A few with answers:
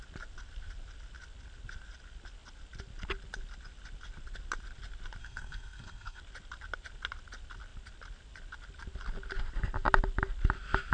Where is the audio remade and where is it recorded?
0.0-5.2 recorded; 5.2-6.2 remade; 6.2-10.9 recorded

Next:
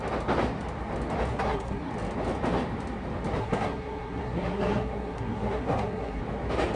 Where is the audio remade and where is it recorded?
0.0-1.3 recorded; 1.3-1.9 remade; 1.9-3.4 recorded; 3.4-6.2 remade; 6.2-6.8 recorded

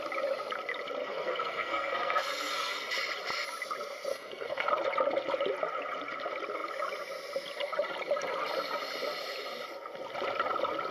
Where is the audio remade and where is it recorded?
0.0-1.0 recorded; 1.0-2.9 remade; 2.9-4.1 recorded; 4.1-4.7 remade; 4.7-10.9 recorded

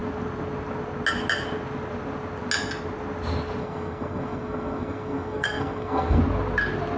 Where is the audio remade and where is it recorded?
0.0-3.6 recorded; 3.6-6.2 remade; 6.2-7.0 recorded

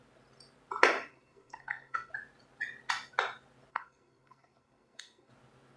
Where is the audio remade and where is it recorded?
0.0-1.1 recorded; 1.1-2.1 remade; 2.1-3.7 recorded; 3.7-5.3 remade; 5.3-5.8 recorded

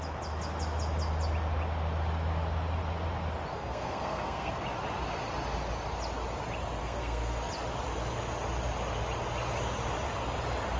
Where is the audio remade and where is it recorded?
0.0-3.5 recorded; 3.5-4.5 remade; 4.5-6.8 recorded; 6.8-7.5 remade; 7.5-10.8 recorded